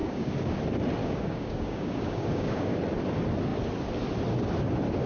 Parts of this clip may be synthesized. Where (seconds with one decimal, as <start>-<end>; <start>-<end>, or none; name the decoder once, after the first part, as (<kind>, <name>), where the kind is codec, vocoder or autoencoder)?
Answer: 0.0-0.6 (codec, DAC); 1.0-2.8